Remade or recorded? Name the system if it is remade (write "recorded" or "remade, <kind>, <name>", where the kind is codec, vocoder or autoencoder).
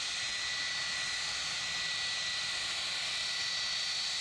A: recorded